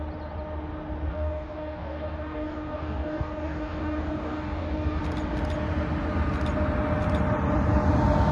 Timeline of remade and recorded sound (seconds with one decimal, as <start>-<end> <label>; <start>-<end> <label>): 0.0-1.1 recorded; 1.1-5.0 remade; 5.0-8.3 recorded